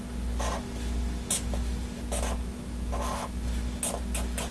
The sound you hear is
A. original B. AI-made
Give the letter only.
A